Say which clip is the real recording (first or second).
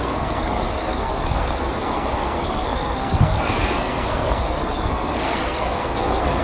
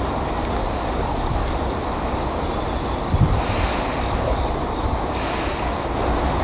second